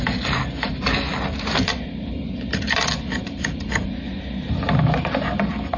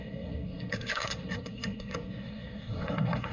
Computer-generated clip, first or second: second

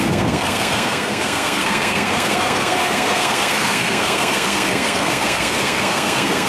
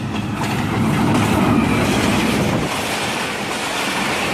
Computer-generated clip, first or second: first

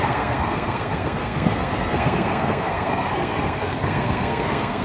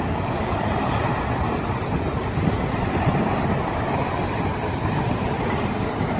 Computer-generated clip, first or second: first